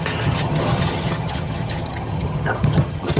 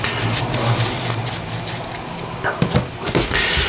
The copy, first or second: first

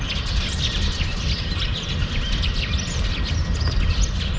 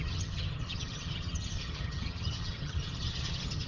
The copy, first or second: second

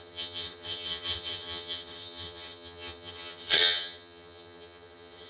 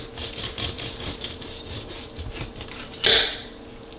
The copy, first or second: first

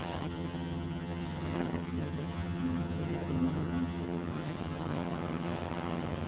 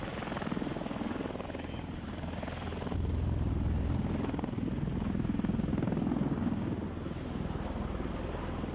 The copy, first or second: first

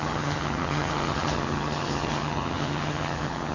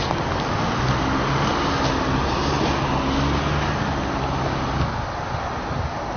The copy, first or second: first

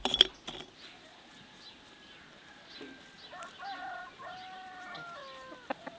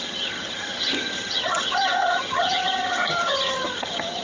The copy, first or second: second